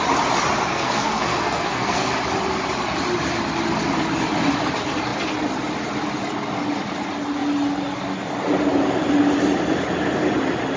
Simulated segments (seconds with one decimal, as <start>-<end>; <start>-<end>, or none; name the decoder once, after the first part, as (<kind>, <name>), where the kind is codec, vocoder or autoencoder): 0.7-2.1 (codec, SNAC)